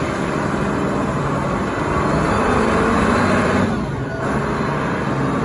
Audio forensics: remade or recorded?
recorded